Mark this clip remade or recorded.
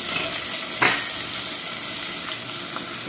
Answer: recorded